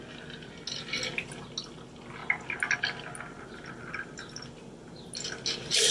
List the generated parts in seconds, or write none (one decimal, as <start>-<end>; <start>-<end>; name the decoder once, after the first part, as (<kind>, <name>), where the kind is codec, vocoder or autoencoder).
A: none